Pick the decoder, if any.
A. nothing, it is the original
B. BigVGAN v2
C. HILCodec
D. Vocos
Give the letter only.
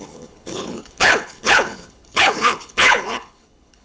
C